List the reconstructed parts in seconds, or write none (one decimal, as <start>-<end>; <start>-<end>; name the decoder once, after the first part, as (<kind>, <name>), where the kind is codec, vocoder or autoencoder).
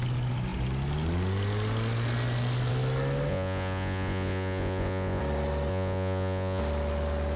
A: 3.3-5.2 (vocoder, Vocos); 5.7-6.6